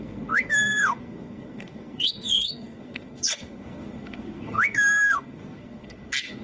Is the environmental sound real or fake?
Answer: fake